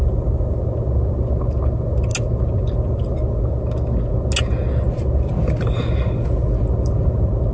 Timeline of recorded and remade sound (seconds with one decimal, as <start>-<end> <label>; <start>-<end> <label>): 0.0-0.6 remade; 0.6-7.5 recorded